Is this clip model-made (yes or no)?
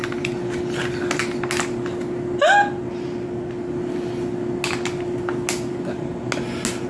no